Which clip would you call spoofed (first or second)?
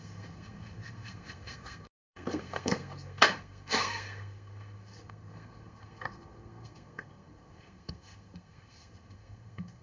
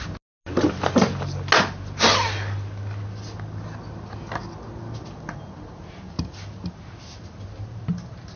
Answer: first